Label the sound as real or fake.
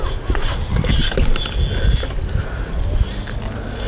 real